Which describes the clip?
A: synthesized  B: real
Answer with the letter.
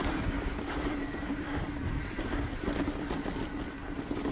B